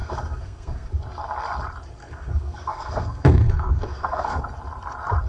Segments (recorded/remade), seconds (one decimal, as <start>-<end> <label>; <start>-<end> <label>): 0.0-0.9 remade; 0.9-2.0 recorded; 2.0-4.4 remade; 4.4-5.3 recorded